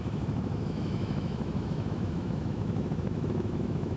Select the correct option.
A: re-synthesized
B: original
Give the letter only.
A